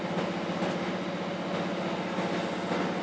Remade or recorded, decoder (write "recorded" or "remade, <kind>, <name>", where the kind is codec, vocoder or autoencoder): recorded